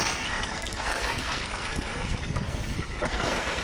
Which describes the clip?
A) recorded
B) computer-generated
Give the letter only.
B